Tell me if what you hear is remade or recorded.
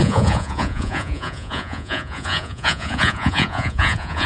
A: remade